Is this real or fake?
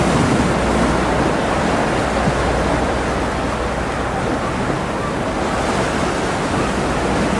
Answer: real